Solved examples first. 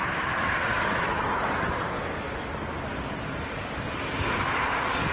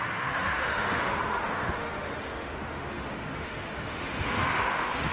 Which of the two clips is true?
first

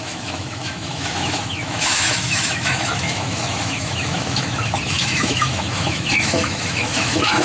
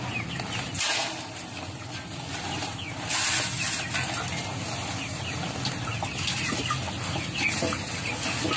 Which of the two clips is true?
second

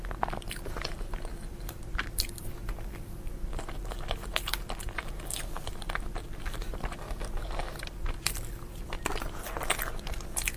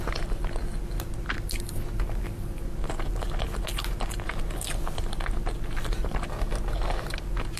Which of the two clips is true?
second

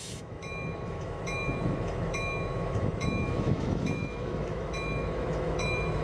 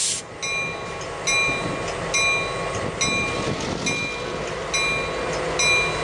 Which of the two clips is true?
second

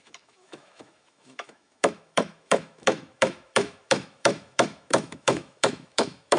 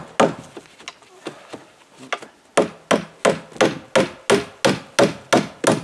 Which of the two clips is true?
second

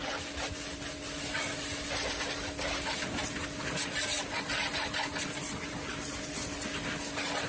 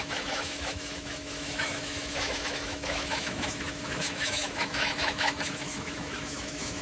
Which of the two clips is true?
first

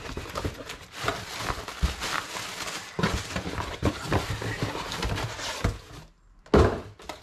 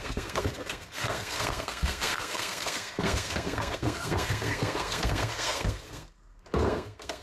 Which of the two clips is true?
first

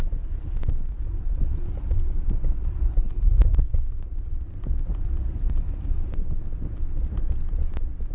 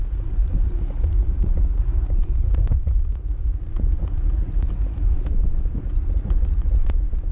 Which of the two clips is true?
first